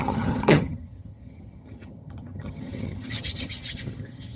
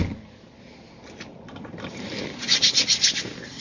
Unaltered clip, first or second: second